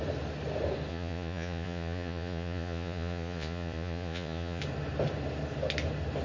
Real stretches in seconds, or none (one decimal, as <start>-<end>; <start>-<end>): 0.0-0.9; 4.6-6.2